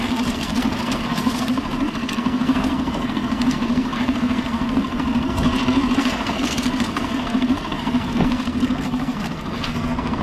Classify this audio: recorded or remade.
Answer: remade